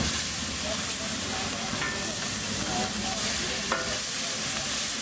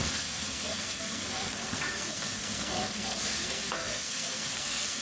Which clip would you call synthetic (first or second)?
second